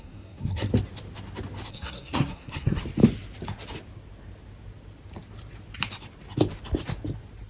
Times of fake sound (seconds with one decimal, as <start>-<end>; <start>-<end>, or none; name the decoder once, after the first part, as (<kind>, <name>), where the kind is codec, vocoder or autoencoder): 0.0-0.7 (codec, SNAC); 1.7-2.8